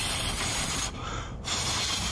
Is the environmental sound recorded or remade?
remade